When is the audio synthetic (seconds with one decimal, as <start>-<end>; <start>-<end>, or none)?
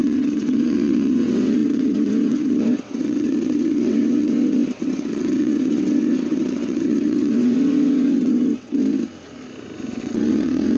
0.0-8.8; 10.0-10.8